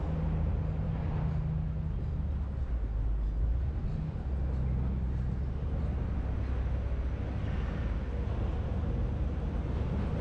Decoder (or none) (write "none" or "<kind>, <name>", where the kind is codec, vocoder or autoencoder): none